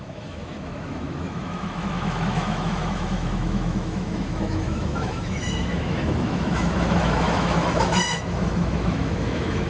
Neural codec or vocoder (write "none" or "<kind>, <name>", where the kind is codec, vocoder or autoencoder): autoencoder, DAC-VAE